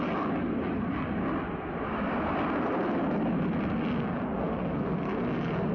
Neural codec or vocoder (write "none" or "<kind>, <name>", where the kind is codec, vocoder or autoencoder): none